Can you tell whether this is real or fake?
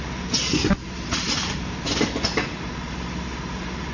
real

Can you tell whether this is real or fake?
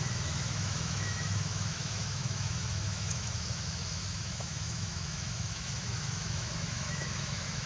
fake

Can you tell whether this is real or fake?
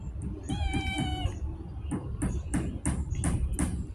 real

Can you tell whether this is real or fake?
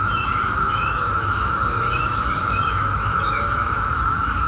fake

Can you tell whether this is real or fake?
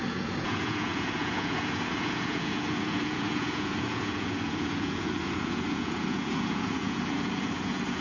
fake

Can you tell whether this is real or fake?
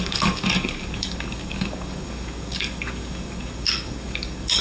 fake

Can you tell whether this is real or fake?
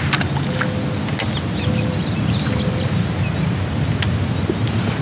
real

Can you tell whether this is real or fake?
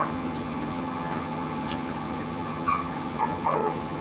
fake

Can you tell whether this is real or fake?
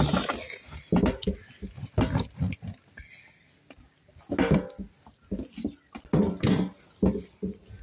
real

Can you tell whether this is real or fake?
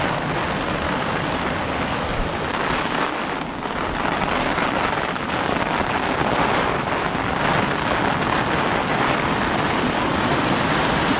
real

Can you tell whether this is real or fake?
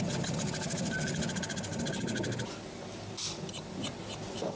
real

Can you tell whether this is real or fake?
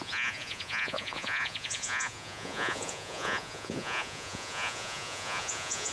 fake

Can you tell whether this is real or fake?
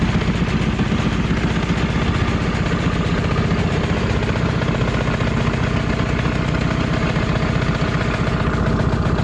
real